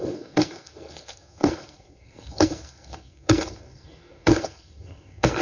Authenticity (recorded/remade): remade